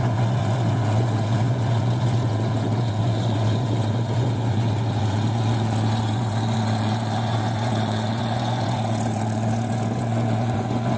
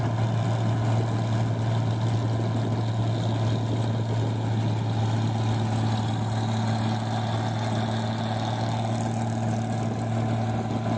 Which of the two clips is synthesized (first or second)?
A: first